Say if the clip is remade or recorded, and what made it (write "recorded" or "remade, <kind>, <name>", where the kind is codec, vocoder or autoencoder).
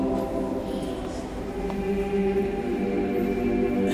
recorded